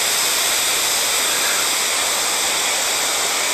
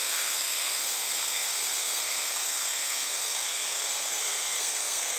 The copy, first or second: second